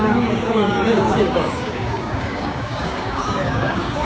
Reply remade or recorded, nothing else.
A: remade